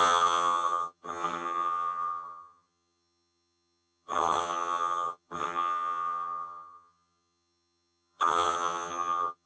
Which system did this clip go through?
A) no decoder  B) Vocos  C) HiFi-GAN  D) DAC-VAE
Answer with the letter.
C